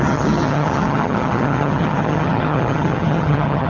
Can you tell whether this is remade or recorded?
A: remade